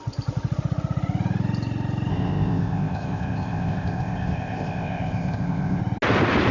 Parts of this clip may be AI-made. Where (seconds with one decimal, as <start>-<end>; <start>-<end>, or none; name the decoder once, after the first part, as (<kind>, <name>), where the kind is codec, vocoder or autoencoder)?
2.1-5.8 (codec, ZipCodec)